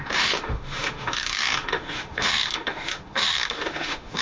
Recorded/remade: remade